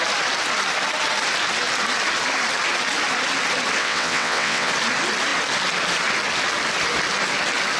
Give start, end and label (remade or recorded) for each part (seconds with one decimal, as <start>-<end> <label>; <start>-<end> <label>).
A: 0.0-3.8 recorded; 3.8-4.7 remade; 4.7-7.8 recorded